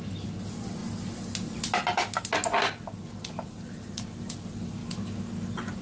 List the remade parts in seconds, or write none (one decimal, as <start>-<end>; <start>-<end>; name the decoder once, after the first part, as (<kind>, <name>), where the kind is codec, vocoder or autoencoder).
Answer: none